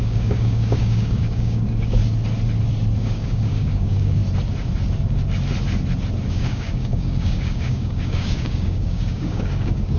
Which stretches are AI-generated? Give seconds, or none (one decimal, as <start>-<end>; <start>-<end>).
0.0-2.0; 3.0-4.2; 6.3-10.0